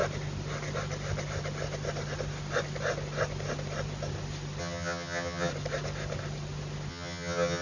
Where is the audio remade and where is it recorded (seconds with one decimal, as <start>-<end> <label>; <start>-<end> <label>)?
0.0-4.6 recorded; 4.6-5.5 remade; 5.5-6.9 recorded; 6.9-7.6 remade